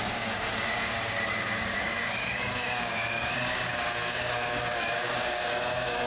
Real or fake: fake